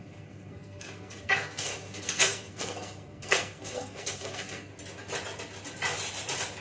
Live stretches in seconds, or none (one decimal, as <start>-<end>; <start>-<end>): 4.7-6.6